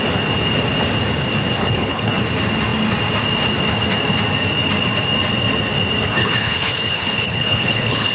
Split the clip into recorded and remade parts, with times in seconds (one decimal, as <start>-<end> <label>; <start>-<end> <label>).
0.0-1.6 recorded; 1.6-2.2 remade; 2.2-6.1 recorded; 6.1-8.1 remade